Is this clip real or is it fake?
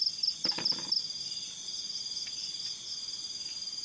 real